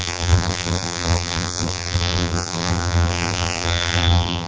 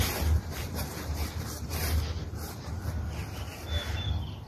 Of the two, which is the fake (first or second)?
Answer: first